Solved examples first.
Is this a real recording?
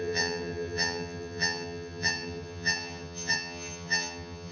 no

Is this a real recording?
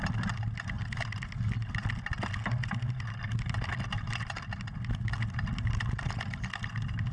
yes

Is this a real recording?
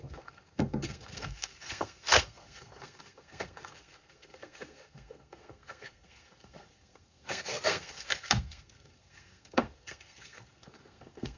no